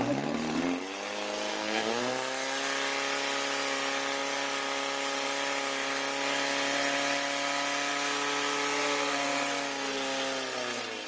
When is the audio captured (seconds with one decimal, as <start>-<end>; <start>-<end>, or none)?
0.0-1.5; 2.0-11.1